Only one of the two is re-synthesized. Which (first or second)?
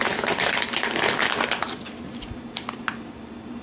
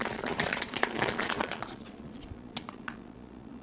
second